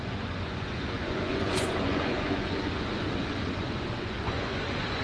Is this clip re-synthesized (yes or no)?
yes